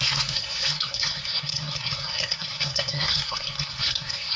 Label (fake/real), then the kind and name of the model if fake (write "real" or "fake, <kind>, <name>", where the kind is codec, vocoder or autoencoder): fake, codec, SNAC